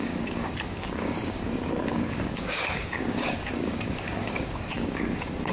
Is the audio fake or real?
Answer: fake